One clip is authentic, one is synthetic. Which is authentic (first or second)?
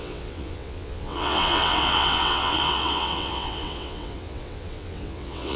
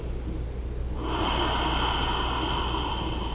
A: second